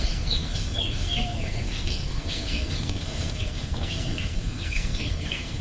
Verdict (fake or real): fake